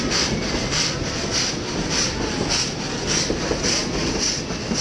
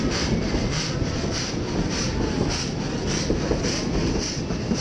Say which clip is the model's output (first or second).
second